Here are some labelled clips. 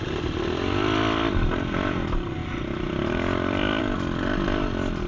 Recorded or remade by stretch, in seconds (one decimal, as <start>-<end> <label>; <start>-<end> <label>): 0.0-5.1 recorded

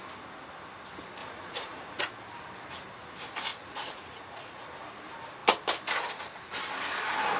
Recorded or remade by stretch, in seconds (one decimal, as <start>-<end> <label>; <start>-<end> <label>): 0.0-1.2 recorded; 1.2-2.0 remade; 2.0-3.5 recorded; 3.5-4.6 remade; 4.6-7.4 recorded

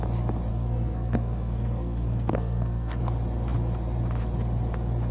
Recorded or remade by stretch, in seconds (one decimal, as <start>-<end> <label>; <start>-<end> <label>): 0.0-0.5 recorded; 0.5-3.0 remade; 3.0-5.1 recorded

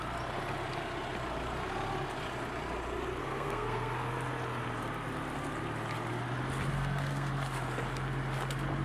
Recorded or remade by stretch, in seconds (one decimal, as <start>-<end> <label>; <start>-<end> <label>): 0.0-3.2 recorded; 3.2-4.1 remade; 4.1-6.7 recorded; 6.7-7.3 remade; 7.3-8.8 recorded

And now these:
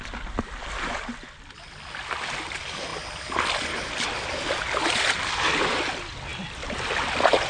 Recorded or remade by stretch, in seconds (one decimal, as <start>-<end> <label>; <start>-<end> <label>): 0.0-7.5 recorded

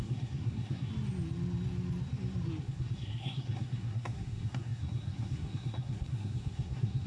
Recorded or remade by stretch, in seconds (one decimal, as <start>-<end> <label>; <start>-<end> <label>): 0.0-0.9 remade; 0.9-2.6 recorded; 2.6-7.1 remade